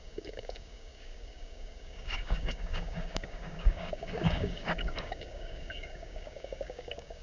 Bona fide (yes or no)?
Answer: no